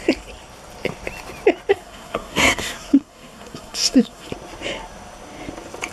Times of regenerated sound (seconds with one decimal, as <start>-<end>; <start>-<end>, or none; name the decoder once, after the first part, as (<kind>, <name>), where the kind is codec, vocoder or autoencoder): 1.7-4.3 (codec, SNAC)